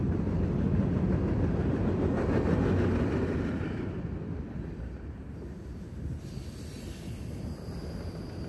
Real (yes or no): yes